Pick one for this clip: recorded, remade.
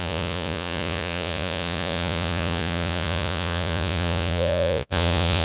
remade